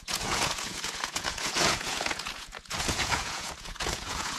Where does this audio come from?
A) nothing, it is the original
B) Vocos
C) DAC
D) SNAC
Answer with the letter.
B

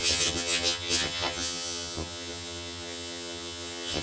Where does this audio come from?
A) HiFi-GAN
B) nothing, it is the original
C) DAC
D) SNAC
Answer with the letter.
A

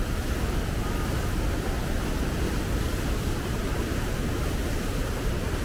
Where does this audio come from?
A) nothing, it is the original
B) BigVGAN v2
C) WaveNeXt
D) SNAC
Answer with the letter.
A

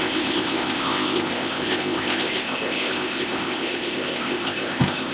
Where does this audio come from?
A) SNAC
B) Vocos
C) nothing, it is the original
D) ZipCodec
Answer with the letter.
D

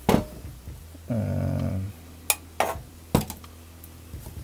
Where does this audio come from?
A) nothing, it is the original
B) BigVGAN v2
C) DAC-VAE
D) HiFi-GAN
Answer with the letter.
A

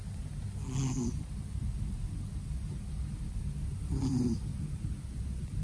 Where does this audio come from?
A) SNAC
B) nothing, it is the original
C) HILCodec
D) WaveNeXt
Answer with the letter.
B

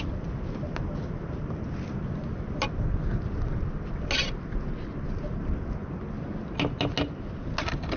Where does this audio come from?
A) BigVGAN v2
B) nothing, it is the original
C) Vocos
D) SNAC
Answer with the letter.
B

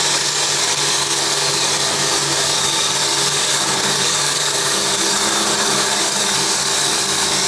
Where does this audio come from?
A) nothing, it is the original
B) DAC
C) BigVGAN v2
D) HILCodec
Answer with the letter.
B